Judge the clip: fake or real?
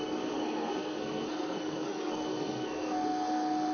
fake